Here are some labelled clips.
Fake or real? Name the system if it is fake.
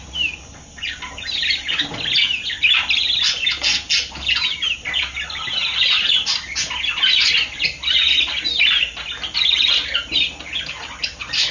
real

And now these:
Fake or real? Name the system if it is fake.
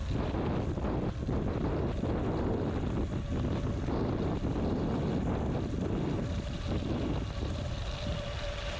real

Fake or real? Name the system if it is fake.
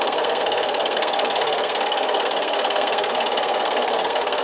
fake, codec, SNAC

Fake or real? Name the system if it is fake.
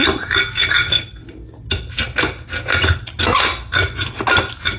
real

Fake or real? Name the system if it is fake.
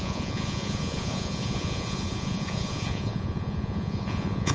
fake, vocoder, Vocos